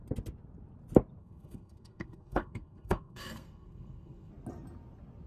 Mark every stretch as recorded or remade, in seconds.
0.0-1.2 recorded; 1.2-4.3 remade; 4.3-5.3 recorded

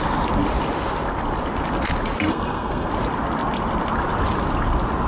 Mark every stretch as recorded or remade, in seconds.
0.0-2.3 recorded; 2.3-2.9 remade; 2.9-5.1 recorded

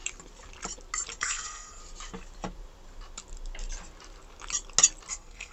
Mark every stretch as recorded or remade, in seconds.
0.0-1.2 recorded; 1.2-1.8 remade; 1.8-5.1 recorded; 5.1-5.5 remade

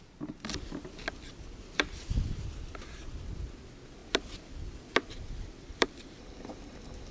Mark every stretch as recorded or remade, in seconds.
0.0-7.1 recorded